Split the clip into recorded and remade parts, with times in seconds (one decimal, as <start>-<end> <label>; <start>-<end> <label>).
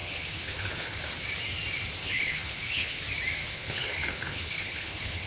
0.0-1.0 remade; 1.0-2.0 recorded; 2.0-3.0 remade; 3.0-3.4 recorded; 3.4-5.3 remade